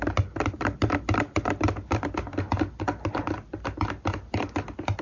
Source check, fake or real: real